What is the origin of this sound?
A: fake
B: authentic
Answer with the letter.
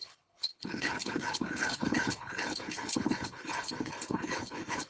A